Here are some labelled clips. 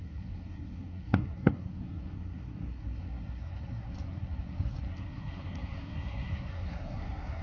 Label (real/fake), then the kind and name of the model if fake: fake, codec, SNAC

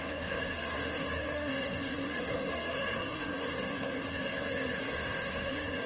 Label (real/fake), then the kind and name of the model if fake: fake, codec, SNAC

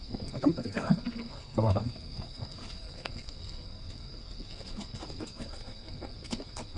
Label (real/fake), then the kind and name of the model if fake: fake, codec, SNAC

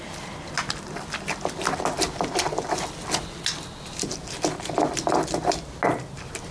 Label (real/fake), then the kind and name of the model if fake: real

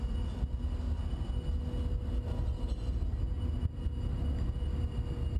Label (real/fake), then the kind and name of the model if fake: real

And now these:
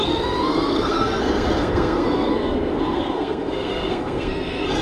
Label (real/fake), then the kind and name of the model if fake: fake, codec, SNAC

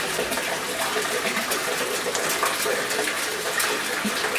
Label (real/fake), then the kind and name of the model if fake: real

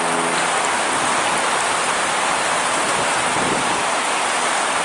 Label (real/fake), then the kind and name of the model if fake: real